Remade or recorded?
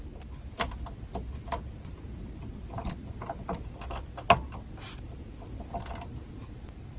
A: recorded